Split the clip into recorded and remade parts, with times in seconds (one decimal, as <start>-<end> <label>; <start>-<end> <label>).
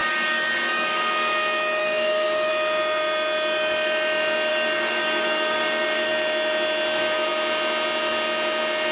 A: 0.0-1.0 remade; 1.0-1.8 recorded; 1.8-2.5 remade; 2.5-4.5 recorded; 4.5-6.1 remade; 6.1-8.9 recorded